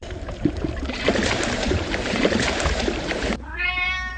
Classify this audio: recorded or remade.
remade